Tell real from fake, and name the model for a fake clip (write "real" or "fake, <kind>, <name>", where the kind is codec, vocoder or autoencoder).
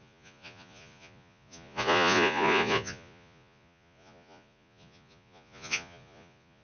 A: fake, vocoder, Vocos